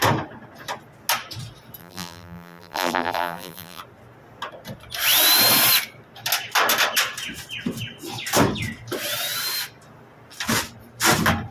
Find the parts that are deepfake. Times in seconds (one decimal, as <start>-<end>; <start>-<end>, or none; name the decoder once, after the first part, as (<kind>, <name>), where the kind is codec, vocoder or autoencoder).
1.8-3.8 (vocoder, BigVGAN v2)

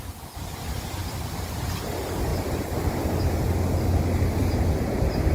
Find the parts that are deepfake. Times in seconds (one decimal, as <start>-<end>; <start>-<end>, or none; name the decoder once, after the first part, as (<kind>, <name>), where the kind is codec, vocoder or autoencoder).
1.0-1.6 (vocoder, BigVGAN v2)

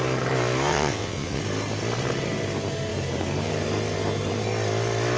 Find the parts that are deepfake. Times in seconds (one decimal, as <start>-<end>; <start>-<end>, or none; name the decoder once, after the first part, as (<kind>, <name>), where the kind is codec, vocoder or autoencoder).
0.7-1.4 (vocoder, WaveNeXt)

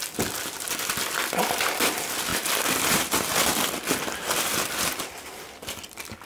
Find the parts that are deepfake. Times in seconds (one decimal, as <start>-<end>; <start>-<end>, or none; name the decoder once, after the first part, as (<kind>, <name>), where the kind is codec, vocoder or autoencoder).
0.0-6.3 (vocoder, BigVGAN v2)